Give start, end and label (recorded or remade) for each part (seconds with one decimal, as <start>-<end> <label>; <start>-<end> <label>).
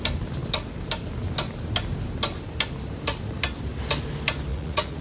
0.0-4.5 recorded; 4.5-5.0 remade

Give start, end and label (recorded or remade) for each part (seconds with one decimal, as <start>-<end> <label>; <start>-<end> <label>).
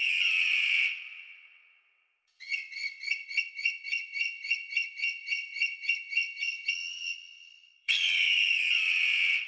0.0-9.5 remade